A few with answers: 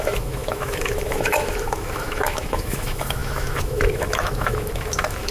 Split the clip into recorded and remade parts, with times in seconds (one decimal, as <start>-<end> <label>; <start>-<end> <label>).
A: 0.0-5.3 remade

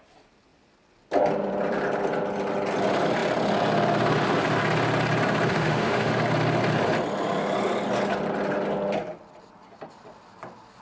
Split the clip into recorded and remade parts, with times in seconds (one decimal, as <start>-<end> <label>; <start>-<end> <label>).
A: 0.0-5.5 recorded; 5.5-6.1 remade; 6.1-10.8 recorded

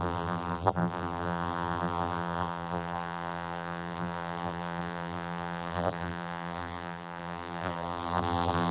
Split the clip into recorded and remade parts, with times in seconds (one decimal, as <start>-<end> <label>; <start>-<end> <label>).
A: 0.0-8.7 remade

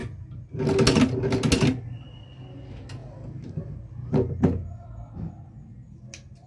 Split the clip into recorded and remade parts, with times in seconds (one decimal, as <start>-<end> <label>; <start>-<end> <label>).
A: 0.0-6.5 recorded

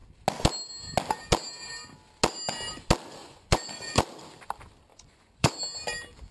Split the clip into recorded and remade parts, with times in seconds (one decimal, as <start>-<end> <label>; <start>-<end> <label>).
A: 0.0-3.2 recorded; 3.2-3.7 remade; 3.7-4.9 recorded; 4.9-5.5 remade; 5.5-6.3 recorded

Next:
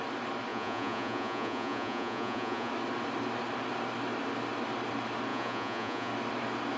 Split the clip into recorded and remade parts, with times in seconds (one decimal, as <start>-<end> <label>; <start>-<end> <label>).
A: 0.0-0.5 recorded; 0.5-2.7 remade; 2.7-5.3 recorded; 5.3-6.1 remade; 6.1-6.8 recorded

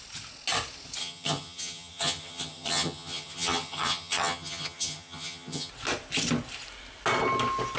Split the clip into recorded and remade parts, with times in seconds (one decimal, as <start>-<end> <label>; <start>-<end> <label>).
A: 0.0-1.0 recorded; 1.0-5.7 remade; 5.7-7.8 recorded

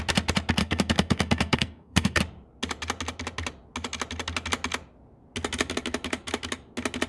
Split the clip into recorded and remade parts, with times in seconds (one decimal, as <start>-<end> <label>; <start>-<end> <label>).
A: 0.0-0.6 recorded; 0.6-2.2 remade; 2.2-7.1 recorded